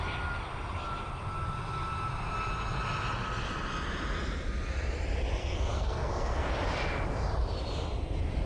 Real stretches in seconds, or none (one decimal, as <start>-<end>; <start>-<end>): 0.0-5.4; 6.5-8.5